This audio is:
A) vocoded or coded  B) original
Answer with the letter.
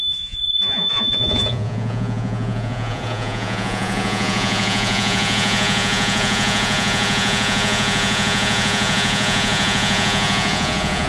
A